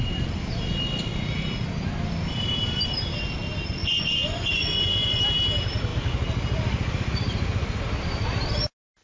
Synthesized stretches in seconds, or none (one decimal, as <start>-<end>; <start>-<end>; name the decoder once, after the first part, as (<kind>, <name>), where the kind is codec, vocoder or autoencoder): 3.8-5.2 (vocoder, Vocos)